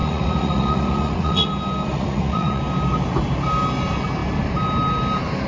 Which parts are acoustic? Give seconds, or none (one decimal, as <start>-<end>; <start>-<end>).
1.5-1.9; 2.6-5.5